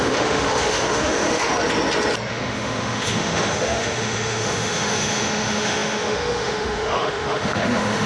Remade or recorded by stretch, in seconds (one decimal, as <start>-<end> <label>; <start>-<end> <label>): 0.0-1.5 remade; 1.5-2.3 recorded; 2.3-8.1 remade